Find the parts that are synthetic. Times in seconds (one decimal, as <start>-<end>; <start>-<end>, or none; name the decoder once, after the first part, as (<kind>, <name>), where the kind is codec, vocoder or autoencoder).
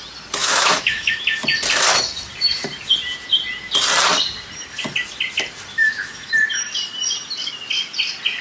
0.4-1.1 (autoencoder, DAC-VAE); 5.7-6.3